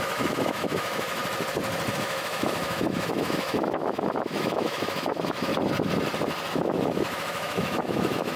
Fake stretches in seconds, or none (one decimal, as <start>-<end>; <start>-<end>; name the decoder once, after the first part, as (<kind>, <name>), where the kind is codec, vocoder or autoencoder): 0.0-1.2 (autoencoder, DAC-VAE); 1.9-5.5; 6.5-8.4